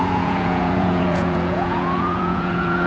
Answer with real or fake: fake